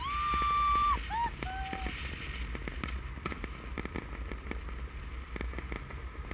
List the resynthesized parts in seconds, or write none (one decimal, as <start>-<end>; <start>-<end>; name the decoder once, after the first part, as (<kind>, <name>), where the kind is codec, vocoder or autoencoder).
none